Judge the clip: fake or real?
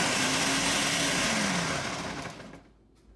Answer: real